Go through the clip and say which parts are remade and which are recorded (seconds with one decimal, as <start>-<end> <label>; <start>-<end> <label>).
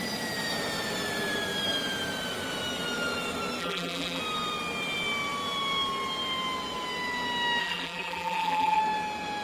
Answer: 0.0-3.6 recorded; 3.6-4.2 remade; 4.2-7.6 recorded; 7.6-8.8 remade; 8.8-9.4 recorded